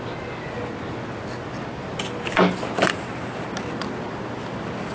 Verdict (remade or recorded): recorded